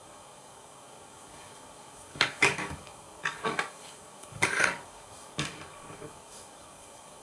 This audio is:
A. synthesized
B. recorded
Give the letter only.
A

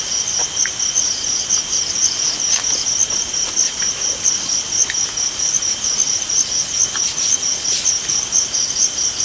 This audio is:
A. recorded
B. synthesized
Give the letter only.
A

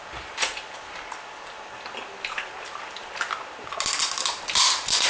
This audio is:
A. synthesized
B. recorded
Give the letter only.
B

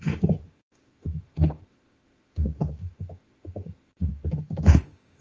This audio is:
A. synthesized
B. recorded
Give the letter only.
A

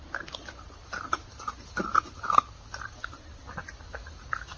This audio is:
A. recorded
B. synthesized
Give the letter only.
A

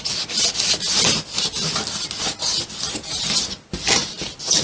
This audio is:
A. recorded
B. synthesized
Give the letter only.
A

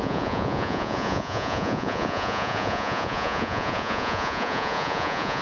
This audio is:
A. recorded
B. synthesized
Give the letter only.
B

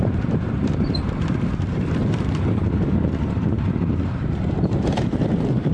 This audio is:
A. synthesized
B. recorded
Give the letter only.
A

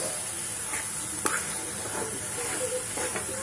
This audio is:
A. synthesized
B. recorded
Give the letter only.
B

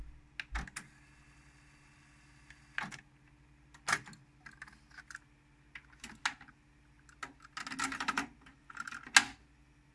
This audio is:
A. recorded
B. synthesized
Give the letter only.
A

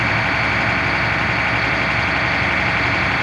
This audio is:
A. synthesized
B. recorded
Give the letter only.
B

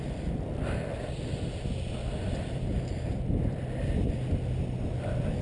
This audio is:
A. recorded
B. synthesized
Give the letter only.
A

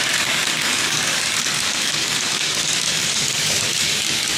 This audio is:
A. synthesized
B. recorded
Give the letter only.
A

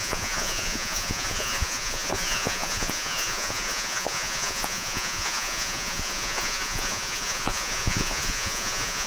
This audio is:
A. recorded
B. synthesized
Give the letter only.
B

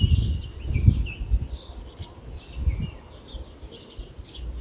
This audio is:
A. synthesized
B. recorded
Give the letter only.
B